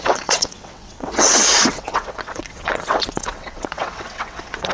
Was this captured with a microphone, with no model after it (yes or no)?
no